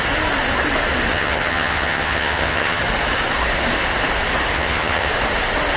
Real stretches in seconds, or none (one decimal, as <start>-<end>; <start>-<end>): 0.0-1.1; 2.8-4.5; 5.1-5.8